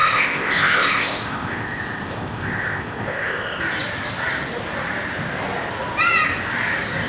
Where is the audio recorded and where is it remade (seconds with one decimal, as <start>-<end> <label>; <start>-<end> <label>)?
0.0-3.6 remade; 3.6-7.1 recorded